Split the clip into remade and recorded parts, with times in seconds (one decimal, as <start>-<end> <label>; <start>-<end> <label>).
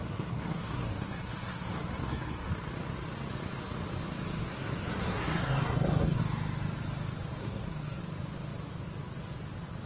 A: 0.0-2.5 remade; 2.5-4.4 recorded; 4.4-6.2 remade; 6.2-7.4 recorded; 7.4-8.0 remade; 8.0-9.9 recorded